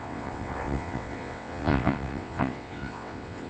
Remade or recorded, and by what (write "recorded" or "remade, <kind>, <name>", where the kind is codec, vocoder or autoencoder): remade, vocoder, WaveNeXt